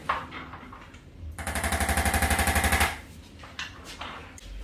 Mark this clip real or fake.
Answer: real